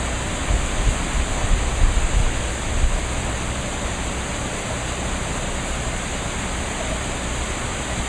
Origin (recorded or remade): recorded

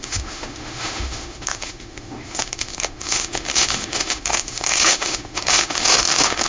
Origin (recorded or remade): remade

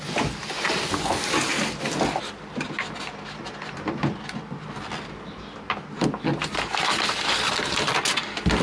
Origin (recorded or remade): recorded